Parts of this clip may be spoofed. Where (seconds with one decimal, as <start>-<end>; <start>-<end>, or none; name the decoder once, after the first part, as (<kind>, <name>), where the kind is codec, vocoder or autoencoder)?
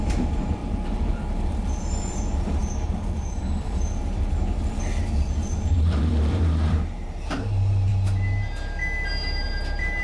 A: 0.0-7.9 (vocoder, BigVGAN v2); 9.1-10.0